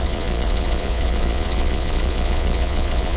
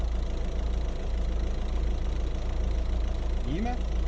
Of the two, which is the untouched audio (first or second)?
second